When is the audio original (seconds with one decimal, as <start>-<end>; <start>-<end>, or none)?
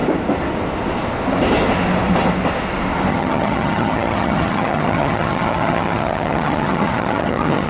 0.0-3.1